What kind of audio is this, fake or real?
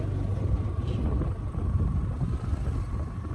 real